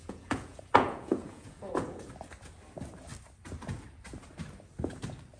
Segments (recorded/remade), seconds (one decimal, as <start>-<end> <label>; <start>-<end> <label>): 0.0-2.1 remade; 2.1-5.4 recorded